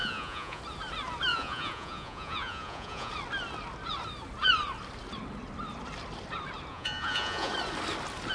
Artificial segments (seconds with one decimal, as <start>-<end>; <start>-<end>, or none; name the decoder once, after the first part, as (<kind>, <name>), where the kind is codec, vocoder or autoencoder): 0.0-0.6 (vocoder, Vocos); 1.3-3.1; 6.7-7.5